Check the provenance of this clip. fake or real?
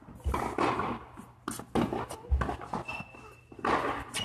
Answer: real